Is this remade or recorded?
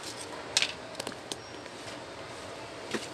recorded